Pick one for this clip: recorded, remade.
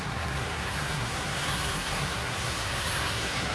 remade